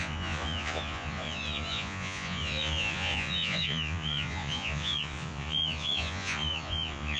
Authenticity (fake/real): fake